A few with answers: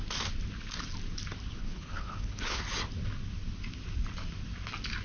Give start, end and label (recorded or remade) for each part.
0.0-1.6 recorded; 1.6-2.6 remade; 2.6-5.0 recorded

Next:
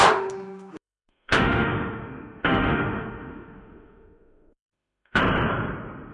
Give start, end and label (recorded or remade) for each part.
0.0-5.2 remade; 5.2-6.1 recorded

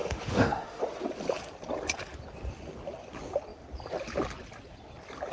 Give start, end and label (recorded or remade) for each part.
0.0-0.8 remade; 0.8-5.3 recorded

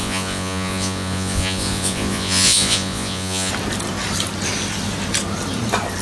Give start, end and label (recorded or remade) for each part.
0.0-3.5 remade; 3.5-6.0 recorded

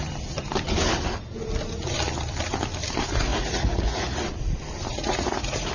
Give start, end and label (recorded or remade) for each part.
0.0-3.3 recorded; 3.3-4.1 remade; 4.1-4.9 recorded; 4.9-5.7 remade